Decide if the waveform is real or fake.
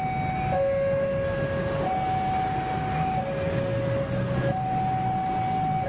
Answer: real